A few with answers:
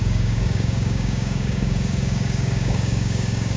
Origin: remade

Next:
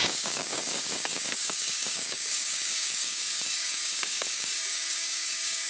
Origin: remade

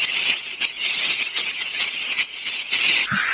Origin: recorded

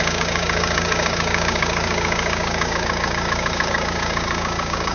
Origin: remade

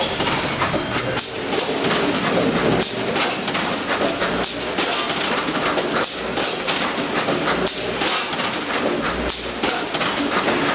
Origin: recorded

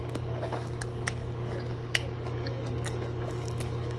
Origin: remade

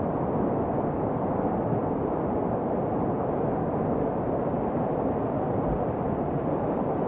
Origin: recorded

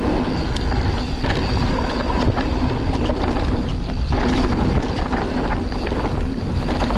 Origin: recorded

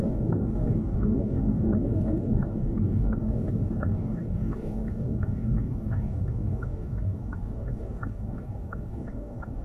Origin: remade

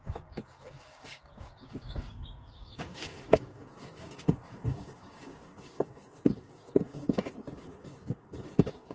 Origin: remade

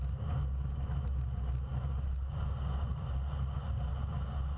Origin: recorded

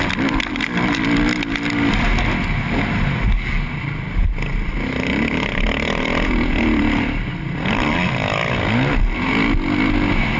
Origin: recorded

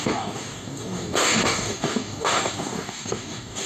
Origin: remade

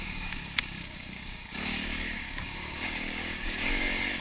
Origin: remade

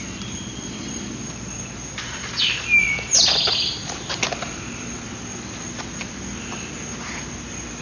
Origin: recorded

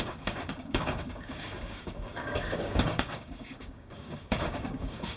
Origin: remade